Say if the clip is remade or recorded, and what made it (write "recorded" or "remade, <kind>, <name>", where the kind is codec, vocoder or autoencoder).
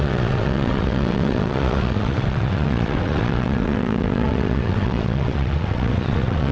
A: remade, vocoder, WaveNeXt